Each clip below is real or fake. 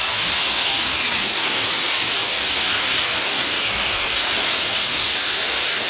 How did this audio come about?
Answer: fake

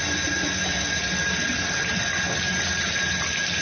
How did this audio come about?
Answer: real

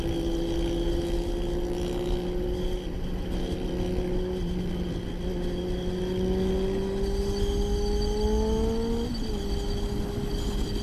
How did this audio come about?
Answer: real